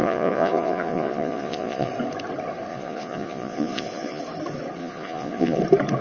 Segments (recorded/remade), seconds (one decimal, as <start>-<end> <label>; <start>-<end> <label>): 0.0-1.9 remade; 1.9-2.7 recorded; 2.7-4.2 remade; 4.2-4.8 recorded; 4.8-5.6 remade; 5.6-6.0 recorded